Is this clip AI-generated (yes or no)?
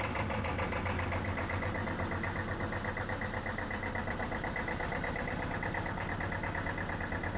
no